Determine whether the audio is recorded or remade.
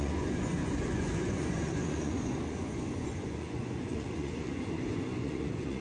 remade